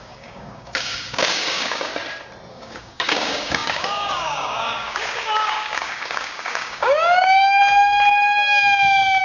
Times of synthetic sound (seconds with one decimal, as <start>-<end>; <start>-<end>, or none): 0.0-1.9; 2.5-7.6